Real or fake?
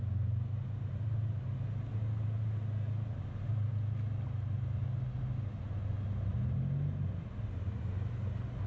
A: real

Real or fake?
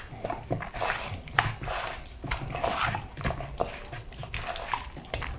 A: real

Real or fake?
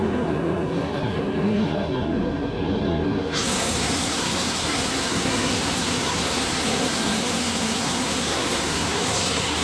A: fake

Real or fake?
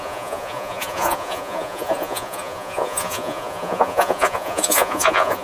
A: fake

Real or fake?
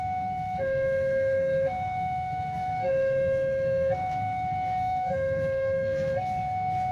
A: fake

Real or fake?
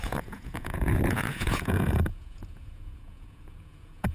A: fake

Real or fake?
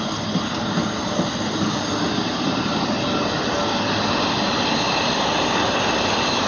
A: real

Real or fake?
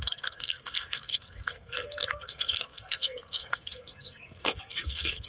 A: fake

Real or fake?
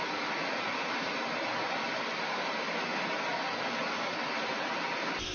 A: real